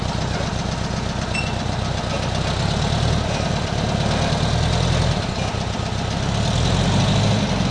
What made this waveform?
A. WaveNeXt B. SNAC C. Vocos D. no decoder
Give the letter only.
D